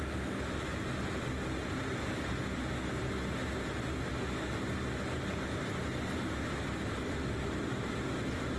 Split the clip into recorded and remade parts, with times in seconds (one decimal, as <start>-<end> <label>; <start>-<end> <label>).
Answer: 0.0-8.6 recorded